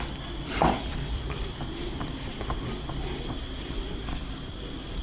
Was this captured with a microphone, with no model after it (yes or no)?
no